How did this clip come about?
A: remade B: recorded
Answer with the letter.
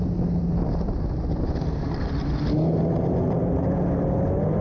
B